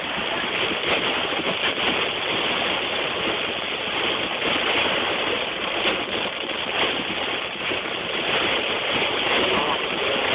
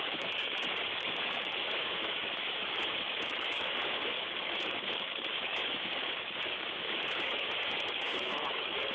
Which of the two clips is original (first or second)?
first